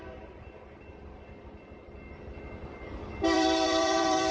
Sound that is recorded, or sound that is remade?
remade